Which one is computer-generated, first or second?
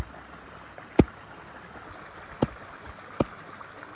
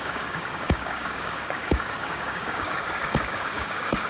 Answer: second